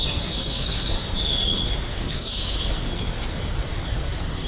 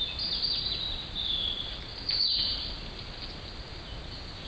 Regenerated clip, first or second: first